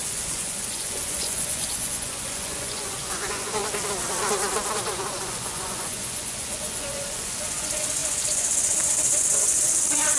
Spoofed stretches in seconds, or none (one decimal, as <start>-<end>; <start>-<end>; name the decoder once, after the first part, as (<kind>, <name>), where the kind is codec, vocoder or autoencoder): 0.0-3.6 (vocoder, Vocos); 4.8-10.2